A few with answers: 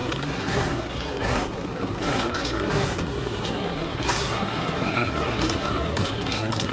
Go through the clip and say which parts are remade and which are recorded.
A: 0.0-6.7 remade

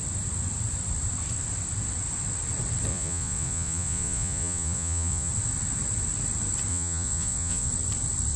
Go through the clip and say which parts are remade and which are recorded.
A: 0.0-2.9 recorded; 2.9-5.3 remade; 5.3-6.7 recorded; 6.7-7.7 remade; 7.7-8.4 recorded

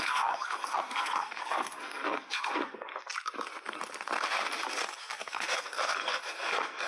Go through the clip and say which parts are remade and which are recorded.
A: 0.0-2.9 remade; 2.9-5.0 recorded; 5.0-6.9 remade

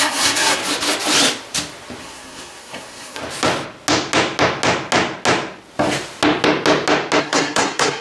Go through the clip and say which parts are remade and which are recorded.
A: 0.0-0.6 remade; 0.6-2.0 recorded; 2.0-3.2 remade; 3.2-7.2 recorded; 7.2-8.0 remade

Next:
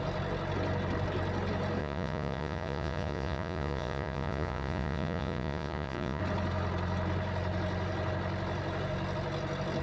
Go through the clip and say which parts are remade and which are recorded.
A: 0.0-1.8 recorded; 1.8-6.2 remade; 6.2-9.8 recorded

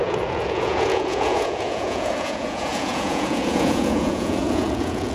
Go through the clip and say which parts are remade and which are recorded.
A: 0.0-5.1 remade